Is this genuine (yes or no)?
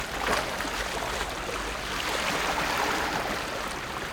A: yes